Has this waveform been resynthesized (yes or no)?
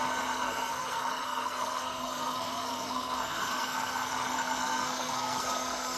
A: yes